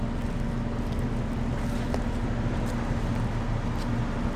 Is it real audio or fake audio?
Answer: real